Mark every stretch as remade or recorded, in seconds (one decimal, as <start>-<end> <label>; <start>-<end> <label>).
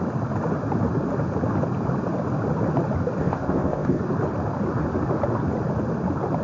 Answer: 0.0-3.2 recorded; 3.2-4.0 remade; 4.0-6.4 recorded